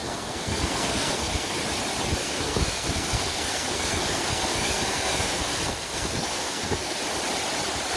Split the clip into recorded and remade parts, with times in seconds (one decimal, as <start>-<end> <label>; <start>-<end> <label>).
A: 0.0-1.6 remade; 1.6-2.2 recorded; 2.2-7.0 remade; 7.0-8.0 recorded